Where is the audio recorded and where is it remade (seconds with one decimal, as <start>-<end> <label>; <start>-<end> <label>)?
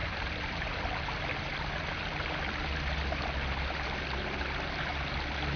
0.0-5.6 recorded